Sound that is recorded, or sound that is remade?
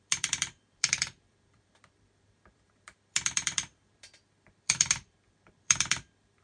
remade